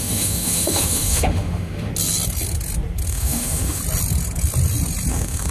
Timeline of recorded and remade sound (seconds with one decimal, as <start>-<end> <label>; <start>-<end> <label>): 0.0-1.9 remade; 1.9-3.1 recorded; 3.1-3.8 remade; 3.8-5.1 recorded; 5.1-5.5 remade